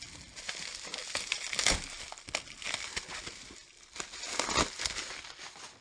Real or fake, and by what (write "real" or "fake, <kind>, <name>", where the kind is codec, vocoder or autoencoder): real